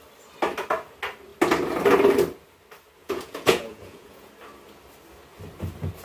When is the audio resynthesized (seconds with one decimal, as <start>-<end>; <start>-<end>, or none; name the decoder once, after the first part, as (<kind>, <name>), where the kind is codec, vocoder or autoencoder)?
3.0-4.3 (vocoder, Vocos)